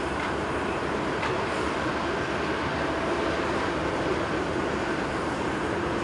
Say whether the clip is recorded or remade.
recorded